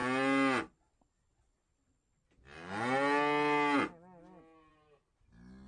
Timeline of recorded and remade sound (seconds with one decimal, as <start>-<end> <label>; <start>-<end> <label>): 0.0-5.7 recorded